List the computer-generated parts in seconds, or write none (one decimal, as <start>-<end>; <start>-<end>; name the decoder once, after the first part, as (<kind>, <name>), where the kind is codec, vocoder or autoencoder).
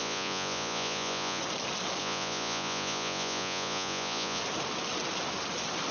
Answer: 0.0-1.4 (vocoder, Vocos); 2.0-4.4